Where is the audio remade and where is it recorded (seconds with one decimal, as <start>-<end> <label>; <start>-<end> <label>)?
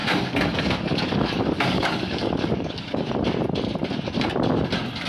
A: 0.0-3.1 remade; 3.1-5.1 recorded